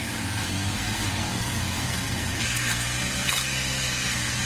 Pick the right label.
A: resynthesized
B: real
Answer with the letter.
A